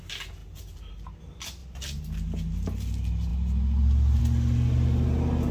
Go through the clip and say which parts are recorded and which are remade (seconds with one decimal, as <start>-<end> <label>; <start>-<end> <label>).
0.0-0.4 recorded; 0.4-1.1 remade; 1.1-5.5 recorded